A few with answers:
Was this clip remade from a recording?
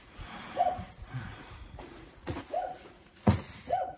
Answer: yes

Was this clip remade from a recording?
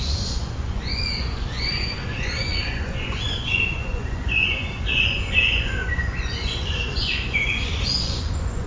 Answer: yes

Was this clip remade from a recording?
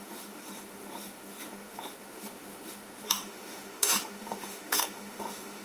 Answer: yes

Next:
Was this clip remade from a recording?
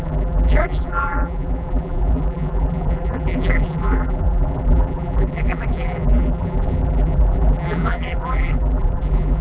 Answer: yes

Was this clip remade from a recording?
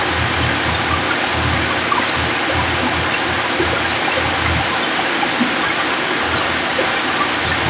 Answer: no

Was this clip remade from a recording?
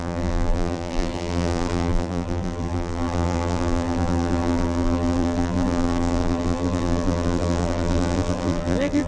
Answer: yes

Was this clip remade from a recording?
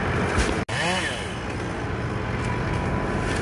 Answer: no